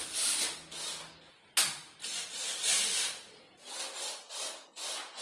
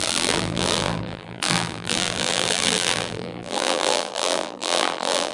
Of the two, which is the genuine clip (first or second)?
first